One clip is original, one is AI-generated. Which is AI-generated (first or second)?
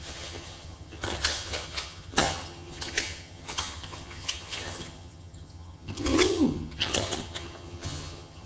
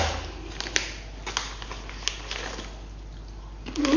first